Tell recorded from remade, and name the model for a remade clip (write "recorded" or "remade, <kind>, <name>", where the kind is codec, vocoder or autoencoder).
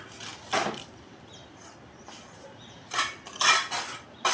recorded